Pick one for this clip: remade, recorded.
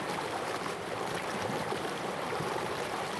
remade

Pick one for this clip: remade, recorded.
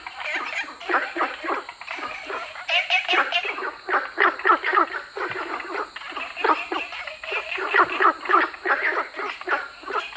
recorded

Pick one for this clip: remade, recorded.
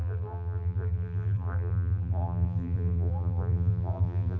remade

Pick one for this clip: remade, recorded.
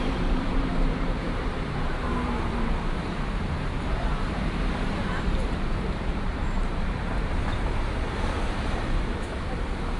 remade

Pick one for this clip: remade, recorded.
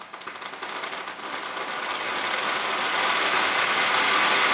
recorded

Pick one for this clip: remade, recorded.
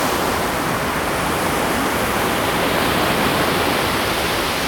remade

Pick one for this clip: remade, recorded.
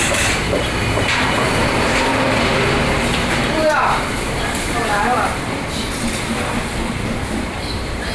remade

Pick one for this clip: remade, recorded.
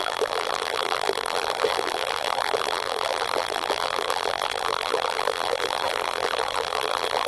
remade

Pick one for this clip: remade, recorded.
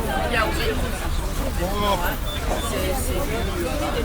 recorded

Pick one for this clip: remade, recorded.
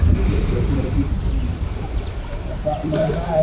remade